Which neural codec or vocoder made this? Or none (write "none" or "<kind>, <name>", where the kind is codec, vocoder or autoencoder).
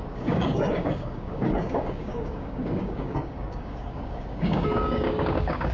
codec, DAC